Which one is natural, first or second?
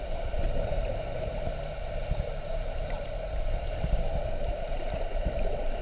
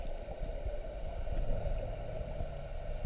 second